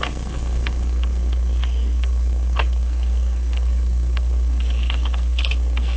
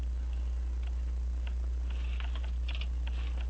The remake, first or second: first